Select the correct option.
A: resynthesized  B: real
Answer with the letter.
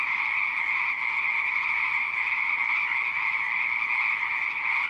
B